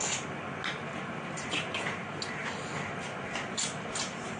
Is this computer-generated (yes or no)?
no